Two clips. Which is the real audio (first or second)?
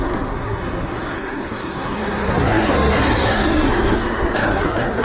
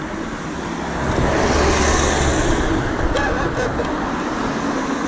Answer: second